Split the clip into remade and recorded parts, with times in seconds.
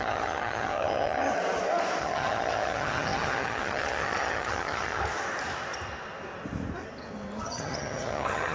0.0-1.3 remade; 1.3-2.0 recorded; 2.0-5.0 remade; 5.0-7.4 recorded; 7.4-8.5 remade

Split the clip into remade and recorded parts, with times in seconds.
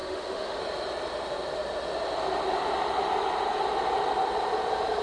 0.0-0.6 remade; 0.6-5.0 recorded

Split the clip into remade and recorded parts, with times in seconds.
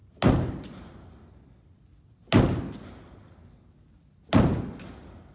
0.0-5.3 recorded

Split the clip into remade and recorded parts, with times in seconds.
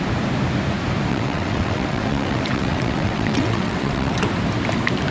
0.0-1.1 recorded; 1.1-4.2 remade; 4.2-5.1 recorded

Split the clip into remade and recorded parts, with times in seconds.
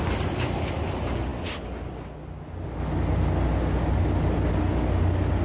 0.0-5.4 recorded